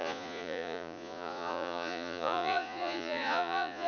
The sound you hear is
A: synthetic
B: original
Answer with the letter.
A